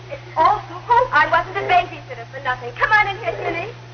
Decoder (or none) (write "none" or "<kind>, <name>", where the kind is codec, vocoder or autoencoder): none